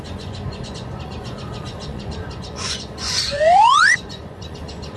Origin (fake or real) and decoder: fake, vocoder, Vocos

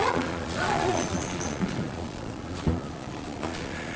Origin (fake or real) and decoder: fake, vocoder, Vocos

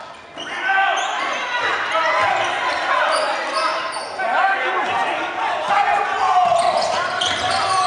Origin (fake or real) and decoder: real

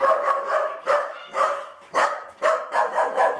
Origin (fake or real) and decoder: fake, autoencoder, DAC-VAE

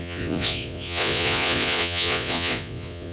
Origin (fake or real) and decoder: fake, vocoder, Vocos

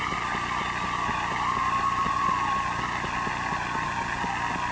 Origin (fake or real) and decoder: real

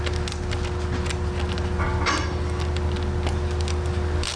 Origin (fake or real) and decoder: real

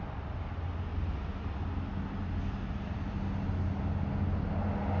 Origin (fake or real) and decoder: real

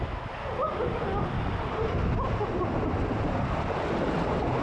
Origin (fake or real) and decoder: real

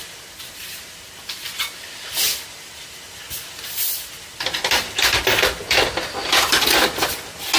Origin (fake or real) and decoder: real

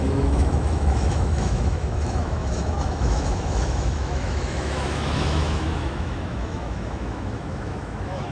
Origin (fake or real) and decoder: fake, autoencoder, DAC-VAE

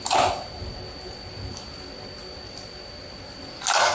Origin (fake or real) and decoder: real